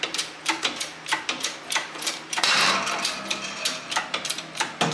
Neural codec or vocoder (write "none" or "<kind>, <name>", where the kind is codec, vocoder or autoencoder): vocoder, BigVGAN v2